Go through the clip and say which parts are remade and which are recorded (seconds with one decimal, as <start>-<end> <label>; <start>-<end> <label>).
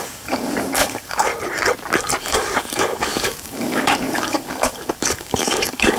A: 0.0-1.3 remade; 1.3-2.2 recorded; 2.2-6.0 remade